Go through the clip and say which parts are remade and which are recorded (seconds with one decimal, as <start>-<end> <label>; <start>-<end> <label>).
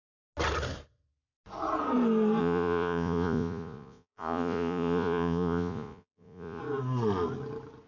0.0-2.4 recorded; 2.4-6.6 remade; 6.6-7.9 recorded